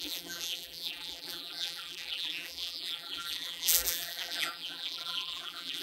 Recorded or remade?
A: remade